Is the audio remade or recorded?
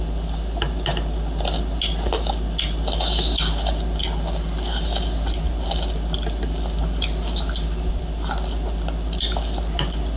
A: recorded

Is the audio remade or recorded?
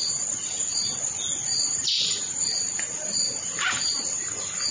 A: recorded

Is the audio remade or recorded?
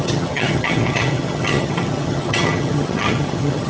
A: remade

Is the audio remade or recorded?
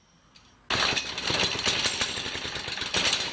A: recorded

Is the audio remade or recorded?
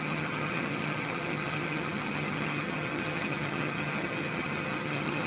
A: remade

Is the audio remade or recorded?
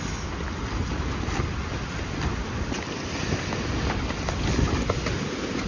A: recorded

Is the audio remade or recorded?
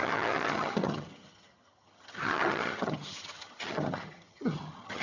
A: remade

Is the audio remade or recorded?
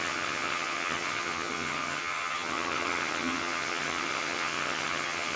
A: remade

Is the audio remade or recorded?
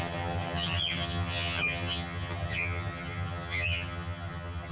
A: remade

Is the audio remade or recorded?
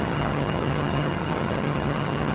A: remade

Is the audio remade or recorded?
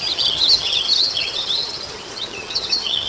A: remade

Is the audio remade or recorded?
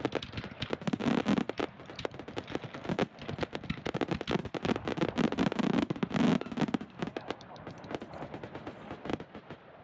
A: recorded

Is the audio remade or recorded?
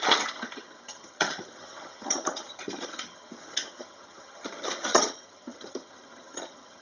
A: remade